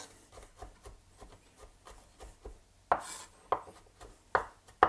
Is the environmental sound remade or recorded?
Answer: recorded